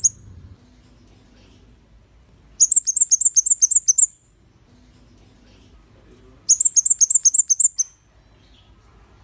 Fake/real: real